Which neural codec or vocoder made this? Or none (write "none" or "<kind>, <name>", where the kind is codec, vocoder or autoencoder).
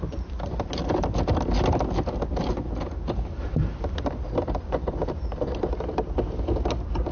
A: none